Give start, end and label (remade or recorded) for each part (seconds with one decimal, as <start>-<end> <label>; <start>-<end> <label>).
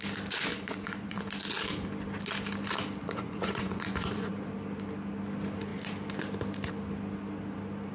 0.0-0.5 recorded; 0.5-1.2 remade; 1.2-3.0 recorded; 3.0-4.3 remade; 4.3-7.9 recorded